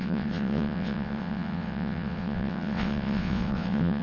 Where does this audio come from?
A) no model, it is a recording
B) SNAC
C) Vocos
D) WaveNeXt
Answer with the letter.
D